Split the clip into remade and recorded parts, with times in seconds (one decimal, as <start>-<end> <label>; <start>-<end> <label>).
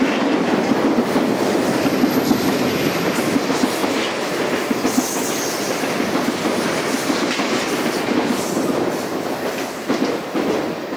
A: 0.0-11.0 recorded